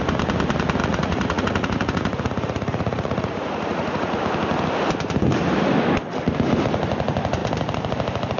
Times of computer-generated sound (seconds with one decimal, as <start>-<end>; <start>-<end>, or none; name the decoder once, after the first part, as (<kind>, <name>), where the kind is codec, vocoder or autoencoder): 0.8-4.2 (vocoder, Vocos)